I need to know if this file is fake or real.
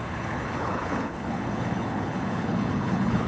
fake